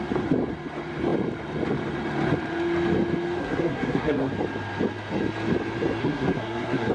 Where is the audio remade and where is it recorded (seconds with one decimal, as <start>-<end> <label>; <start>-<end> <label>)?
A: 0.0-3.4 recorded; 3.4-4.3 remade; 4.3-6.0 recorded; 6.0-6.9 remade